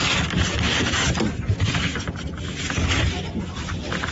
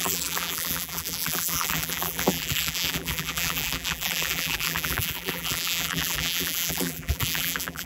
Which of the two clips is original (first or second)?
first